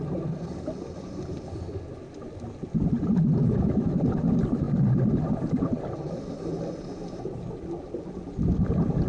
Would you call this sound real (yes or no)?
yes